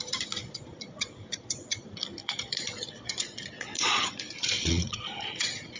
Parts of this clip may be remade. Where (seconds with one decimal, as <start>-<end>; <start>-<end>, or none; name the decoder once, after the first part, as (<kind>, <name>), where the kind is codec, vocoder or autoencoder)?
0.4-1.8 (vocoder, Vocos); 2.2-5.8